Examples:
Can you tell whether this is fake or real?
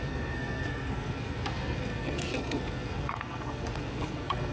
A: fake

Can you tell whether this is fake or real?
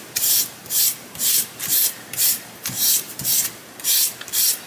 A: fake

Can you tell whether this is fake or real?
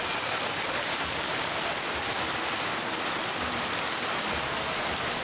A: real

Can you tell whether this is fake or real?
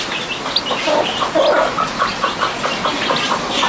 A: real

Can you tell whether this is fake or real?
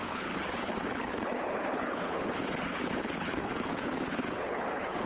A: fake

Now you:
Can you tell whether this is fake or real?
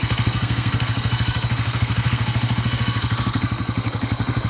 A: fake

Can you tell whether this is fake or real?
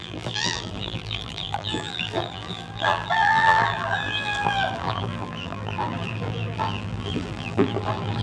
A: fake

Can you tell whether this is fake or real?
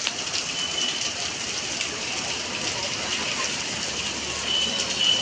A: fake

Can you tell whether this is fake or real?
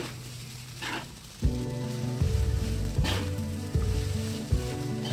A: fake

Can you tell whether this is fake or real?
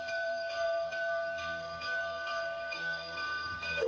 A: fake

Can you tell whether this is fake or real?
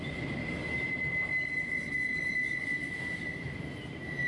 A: real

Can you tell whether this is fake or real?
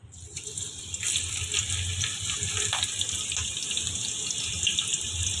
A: real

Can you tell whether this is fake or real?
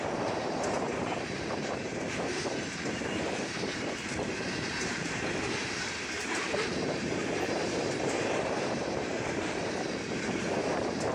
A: fake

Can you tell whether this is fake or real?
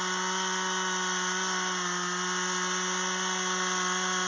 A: real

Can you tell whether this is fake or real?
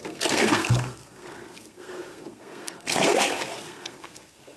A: fake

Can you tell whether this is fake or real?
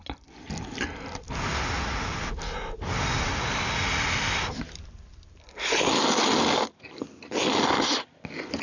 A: real